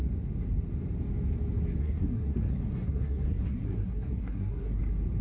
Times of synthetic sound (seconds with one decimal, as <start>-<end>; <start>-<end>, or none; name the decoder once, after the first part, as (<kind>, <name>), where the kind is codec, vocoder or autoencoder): 1.8-4.8 (codec, SNAC)